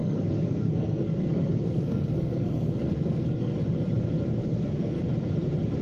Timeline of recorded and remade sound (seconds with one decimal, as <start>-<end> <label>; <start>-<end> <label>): 0.0-3.5 remade; 3.5-4.4 recorded; 4.4-5.0 remade; 5.0-5.8 recorded